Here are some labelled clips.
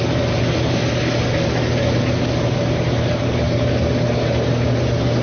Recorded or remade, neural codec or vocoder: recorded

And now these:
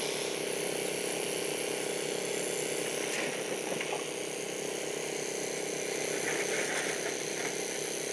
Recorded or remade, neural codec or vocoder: recorded